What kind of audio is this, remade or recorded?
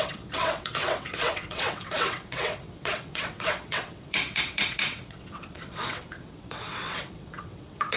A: remade